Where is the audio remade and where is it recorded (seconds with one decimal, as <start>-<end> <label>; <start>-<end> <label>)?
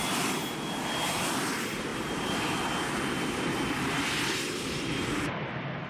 0.0-5.9 recorded